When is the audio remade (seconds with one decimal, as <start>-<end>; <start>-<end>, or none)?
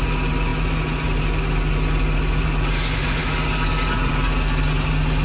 none